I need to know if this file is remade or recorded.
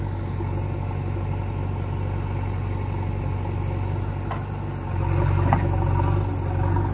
recorded